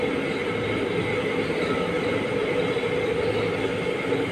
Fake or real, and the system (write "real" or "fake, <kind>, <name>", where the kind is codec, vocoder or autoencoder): real